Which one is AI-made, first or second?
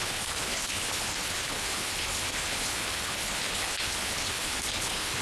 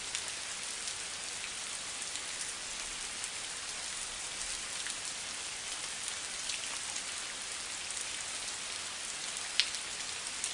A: first